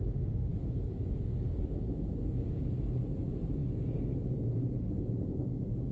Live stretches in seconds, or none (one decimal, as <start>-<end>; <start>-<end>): 0.0-0.5; 3.0-5.9